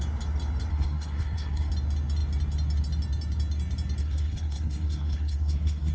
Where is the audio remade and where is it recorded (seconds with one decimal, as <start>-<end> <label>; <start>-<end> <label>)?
0.0-0.7 recorded; 0.7-1.7 remade; 1.7-4.0 recorded; 4.0-5.9 remade